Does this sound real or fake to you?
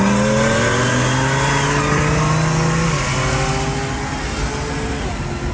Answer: real